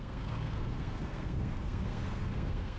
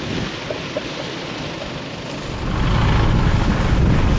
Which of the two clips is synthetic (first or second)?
first